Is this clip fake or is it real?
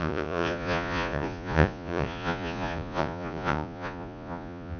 fake